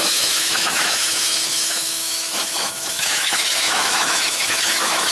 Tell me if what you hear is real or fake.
fake